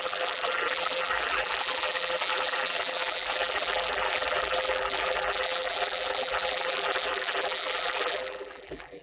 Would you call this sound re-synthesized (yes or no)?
yes